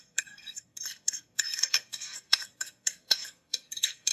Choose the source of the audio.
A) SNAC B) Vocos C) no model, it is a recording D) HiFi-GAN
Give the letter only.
A